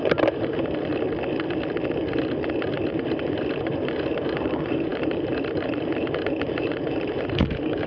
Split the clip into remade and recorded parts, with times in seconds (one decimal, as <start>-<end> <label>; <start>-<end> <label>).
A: 0.0-0.9 remade; 0.9-2.9 recorded; 2.9-7.9 remade